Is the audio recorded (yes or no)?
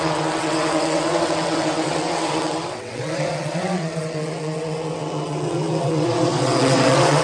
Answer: no